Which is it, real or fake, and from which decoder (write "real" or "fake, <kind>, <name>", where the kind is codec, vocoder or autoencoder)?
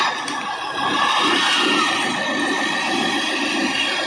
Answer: real